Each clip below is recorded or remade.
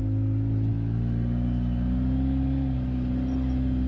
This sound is recorded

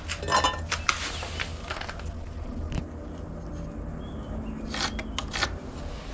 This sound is recorded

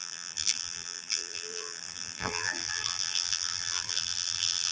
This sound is remade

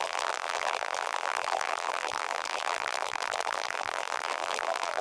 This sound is remade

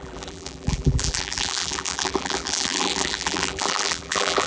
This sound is remade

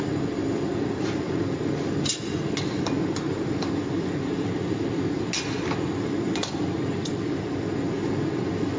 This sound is recorded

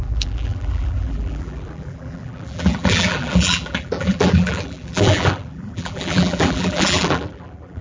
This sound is remade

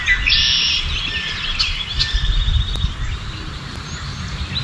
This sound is recorded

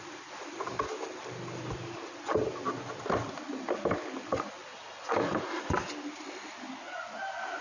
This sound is remade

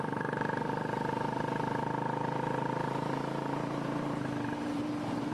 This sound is remade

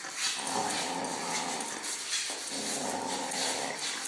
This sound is recorded